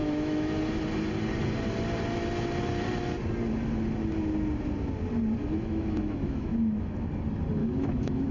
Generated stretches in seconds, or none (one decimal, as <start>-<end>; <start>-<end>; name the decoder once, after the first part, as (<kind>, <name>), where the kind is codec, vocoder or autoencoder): 0.0-0.6 (autoencoder, DAC-VAE); 5.4-7.1; 7.6-8.3